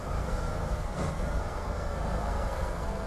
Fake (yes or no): yes